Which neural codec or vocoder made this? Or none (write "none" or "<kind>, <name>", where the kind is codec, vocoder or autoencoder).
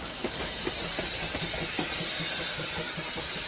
none